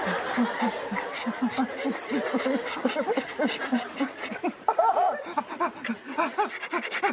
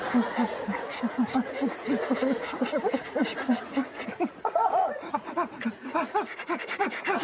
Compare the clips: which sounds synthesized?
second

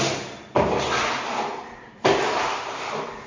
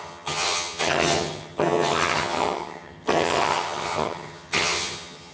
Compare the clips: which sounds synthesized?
second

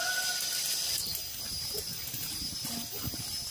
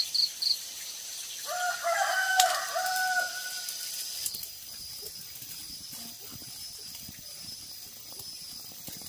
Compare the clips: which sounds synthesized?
second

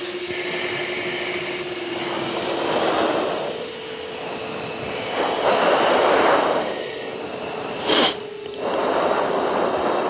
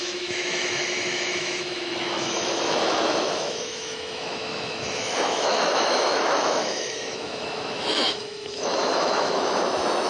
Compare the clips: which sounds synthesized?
second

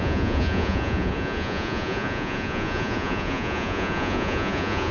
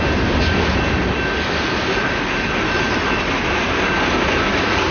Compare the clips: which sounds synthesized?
first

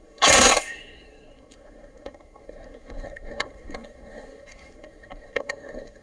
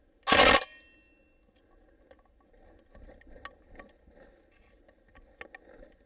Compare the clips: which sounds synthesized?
first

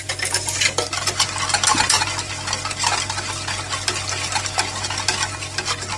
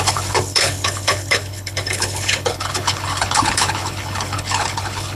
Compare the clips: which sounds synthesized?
second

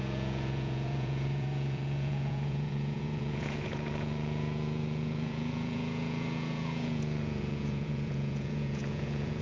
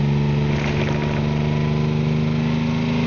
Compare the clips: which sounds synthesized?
first